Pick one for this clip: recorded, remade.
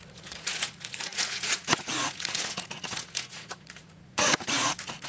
remade